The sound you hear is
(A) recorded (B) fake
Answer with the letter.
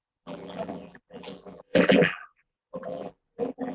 B